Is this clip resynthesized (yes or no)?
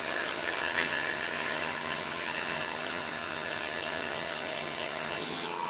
yes